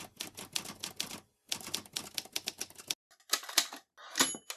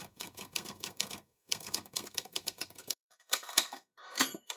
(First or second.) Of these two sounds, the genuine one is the first